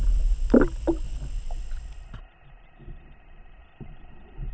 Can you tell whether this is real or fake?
real